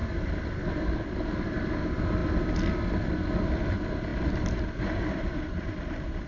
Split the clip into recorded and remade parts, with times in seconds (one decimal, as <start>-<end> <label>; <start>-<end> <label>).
0.0-2.2 remade; 2.2-3.1 recorded; 3.1-6.3 remade